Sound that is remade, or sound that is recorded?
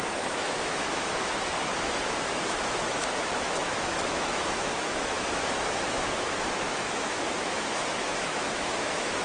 remade